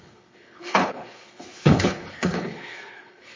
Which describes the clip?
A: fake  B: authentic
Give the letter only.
A